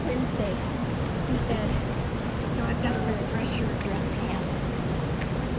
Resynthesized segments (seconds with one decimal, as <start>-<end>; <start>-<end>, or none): none